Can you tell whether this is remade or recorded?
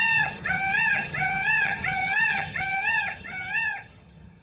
remade